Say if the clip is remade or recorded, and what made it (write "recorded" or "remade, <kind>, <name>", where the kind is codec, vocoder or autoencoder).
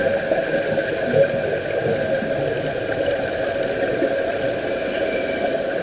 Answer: recorded